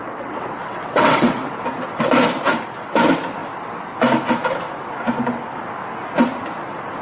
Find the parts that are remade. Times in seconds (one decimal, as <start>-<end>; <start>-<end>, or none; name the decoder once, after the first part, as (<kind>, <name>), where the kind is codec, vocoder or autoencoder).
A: 0.0-1.5 (vocoder, WaveNeXt)